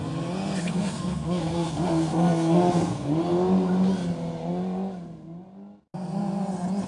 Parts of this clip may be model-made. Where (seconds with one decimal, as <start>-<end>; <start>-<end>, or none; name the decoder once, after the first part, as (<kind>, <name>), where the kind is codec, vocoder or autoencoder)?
0.6-3.1 (codec, SNAC)